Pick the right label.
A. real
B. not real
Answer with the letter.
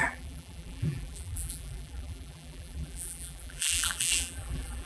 B